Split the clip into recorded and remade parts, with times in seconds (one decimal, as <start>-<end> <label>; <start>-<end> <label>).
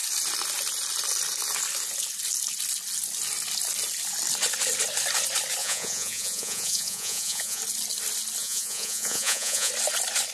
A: 0.0-5.6 recorded; 5.6-7.6 remade; 7.6-8.4 recorded; 8.4-9.7 remade; 9.7-10.3 recorded